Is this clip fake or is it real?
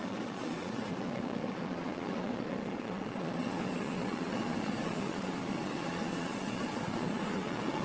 fake